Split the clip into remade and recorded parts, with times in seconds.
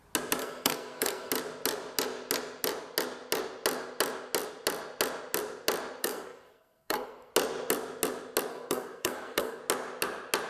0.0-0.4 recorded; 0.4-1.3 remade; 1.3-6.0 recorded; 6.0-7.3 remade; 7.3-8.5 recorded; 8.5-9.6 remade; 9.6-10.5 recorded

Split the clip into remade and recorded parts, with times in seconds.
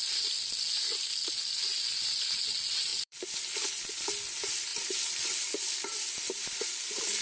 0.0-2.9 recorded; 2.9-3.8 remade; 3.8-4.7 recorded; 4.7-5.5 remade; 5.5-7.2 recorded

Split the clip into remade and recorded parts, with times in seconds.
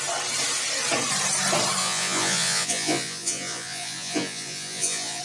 0.0-1.8 recorded; 1.8-5.2 remade